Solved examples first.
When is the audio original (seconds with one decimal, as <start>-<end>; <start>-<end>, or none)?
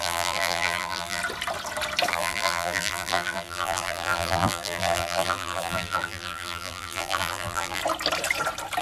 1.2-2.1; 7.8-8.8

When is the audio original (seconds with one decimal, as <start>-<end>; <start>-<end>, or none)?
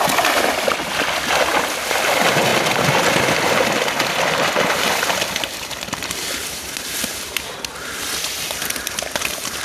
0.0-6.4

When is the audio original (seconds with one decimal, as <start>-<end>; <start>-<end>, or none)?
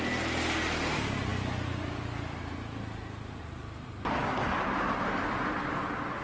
0.0-6.2